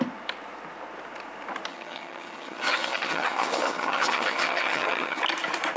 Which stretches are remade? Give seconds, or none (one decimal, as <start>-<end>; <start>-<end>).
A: 1.7-5.2